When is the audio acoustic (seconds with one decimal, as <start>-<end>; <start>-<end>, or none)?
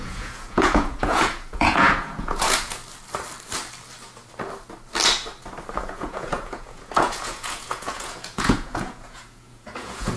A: 2.8-5.8